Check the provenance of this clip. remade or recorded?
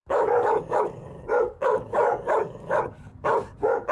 remade